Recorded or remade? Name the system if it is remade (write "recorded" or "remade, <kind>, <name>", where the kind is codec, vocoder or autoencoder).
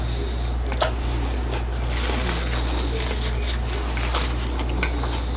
recorded